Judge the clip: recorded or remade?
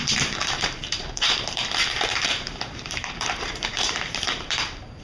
remade